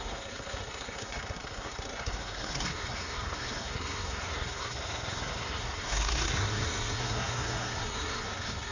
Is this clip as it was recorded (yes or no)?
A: no